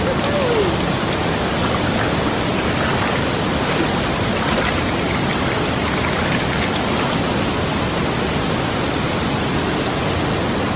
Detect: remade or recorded recorded